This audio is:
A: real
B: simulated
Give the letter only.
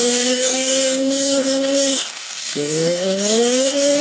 B